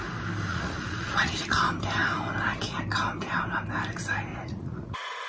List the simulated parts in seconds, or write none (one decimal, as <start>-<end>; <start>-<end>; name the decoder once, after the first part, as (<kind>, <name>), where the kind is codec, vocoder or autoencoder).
0.5-1.3 (vocoder, Vocos); 4.3-5.3

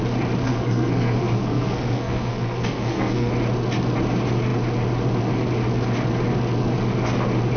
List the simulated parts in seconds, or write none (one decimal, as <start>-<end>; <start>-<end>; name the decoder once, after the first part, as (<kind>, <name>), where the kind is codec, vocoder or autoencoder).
0.4-3.3 (codec, SNAC)

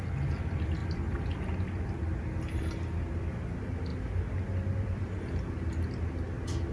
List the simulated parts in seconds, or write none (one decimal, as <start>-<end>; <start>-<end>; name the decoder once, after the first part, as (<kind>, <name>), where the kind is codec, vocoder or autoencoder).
none